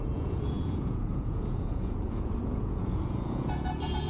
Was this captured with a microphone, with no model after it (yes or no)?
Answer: no